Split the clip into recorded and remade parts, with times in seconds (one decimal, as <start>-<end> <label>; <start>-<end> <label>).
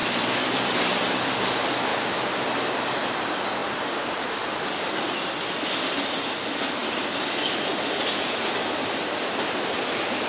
0.0-1.2 remade; 1.2-1.9 recorded; 1.9-2.8 remade; 2.8-3.6 recorded; 3.6-5.2 remade; 5.2-6.8 recorded; 6.8-7.7 remade; 7.7-10.3 recorded